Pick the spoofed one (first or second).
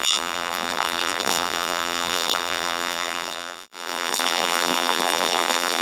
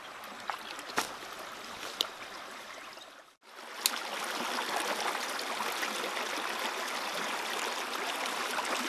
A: first